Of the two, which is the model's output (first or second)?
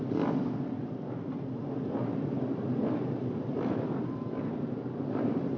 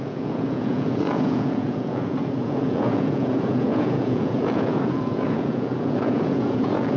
second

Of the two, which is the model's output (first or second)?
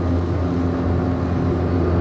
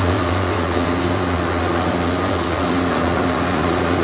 second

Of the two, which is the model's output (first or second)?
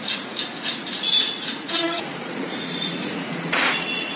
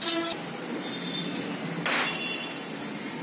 first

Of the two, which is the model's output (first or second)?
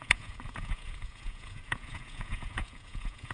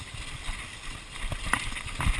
first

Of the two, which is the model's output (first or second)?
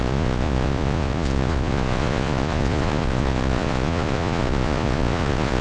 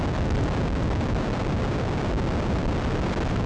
first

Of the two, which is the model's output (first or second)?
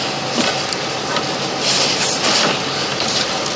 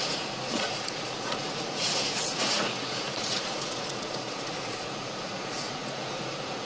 second